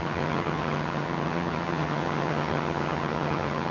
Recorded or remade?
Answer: remade